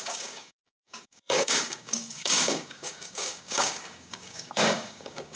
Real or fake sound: fake